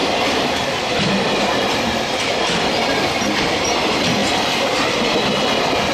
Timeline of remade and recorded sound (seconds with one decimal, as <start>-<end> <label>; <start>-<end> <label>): 0.0-5.9 recorded